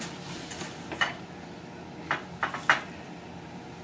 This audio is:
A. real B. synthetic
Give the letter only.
A